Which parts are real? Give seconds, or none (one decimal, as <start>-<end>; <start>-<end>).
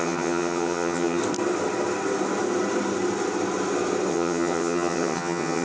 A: 1.2-4.1